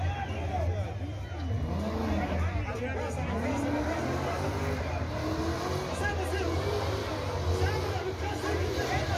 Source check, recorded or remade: recorded